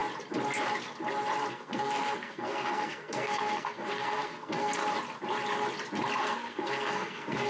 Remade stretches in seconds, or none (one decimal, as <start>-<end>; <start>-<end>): 1.5-4.8; 6.2-7.5